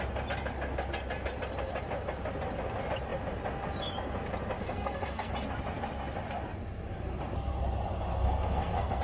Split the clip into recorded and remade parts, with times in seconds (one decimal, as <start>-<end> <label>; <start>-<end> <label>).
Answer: 0.0-4.6 recorded; 4.6-5.3 remade; 5.3-8.1 recorded; 8.1-9.0 remade